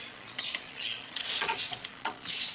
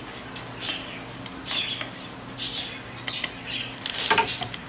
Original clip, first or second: second